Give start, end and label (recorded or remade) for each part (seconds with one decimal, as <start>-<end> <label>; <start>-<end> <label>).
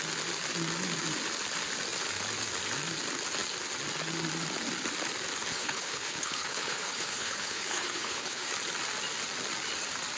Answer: 0.0-5.5 recorded; 5.5-8.5 remade; 8.5-10.2 recorded